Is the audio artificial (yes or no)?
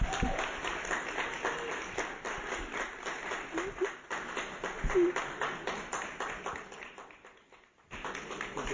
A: no